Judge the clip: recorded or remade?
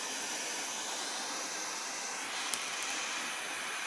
remade